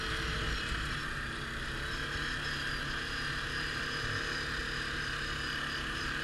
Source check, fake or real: real